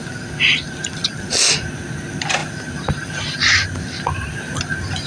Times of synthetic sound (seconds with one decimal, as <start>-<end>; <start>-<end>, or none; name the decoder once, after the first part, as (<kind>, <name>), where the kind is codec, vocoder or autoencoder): 2.4-4.6 (vocoder, BigVGAN v2)